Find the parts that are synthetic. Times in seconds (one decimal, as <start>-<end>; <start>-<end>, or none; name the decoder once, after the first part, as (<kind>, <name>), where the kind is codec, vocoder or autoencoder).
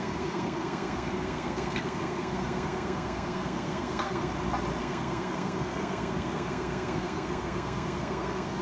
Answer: 0.0-4.3 (codec, SNAC); 4.8-8.6